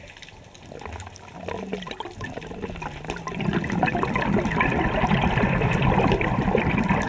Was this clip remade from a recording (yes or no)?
no